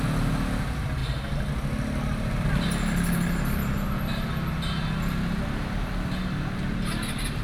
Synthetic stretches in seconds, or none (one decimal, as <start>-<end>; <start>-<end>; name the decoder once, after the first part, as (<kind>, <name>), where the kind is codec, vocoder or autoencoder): none